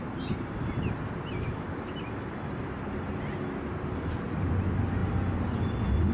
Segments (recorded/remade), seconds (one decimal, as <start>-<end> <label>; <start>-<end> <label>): 0.0-6.1 recorded